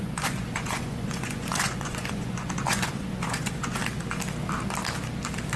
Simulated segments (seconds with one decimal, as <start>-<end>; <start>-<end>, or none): 0.0-3.8